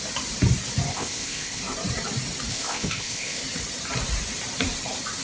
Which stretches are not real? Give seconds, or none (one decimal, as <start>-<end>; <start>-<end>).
0.9-1.6; 2.5-3.4